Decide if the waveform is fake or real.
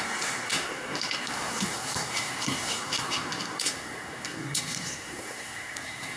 fake